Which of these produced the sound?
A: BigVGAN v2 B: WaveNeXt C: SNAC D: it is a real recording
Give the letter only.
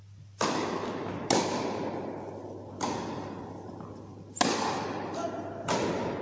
D